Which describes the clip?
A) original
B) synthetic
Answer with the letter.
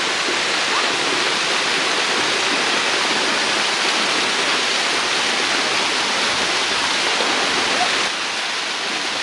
A